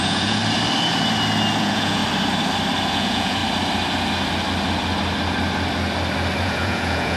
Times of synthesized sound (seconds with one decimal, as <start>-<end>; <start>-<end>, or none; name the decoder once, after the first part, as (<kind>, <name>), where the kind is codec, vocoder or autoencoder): 0.0-0.4 (vocoder, Vocos); 1.6-2.0; 2.9-3.4; 6.4-7.2